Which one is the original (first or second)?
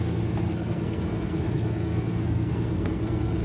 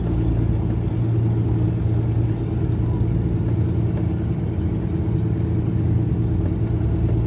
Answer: second